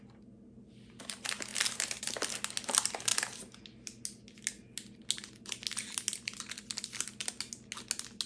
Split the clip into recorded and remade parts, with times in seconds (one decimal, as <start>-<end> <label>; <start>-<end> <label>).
0.0-8.3 recorded